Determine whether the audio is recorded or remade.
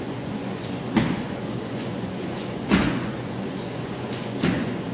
remade